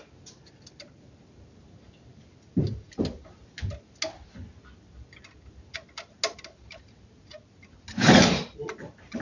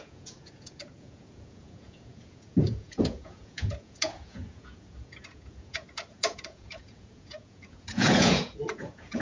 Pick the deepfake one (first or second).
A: second